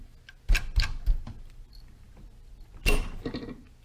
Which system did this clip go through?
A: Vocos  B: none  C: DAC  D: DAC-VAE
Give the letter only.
B